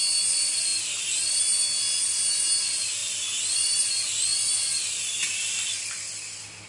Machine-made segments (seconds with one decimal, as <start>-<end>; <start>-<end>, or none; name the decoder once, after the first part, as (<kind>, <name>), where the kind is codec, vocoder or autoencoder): none